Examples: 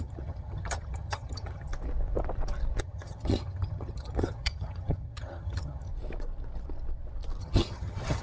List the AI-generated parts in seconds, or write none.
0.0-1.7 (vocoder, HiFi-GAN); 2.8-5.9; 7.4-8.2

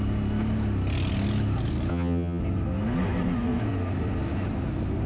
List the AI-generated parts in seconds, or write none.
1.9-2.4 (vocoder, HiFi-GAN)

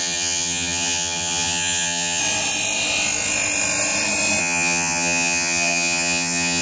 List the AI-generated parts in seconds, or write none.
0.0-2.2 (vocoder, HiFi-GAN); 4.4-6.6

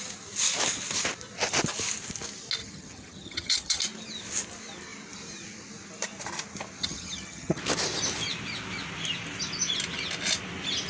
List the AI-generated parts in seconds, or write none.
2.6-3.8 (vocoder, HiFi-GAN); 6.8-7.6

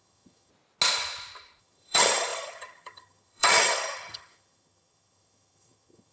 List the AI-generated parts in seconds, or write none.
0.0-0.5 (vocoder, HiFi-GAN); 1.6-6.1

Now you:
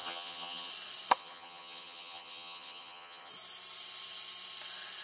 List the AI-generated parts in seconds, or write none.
0.0-0.7 (vocoder, HiFi-GAN); 1.2-3.3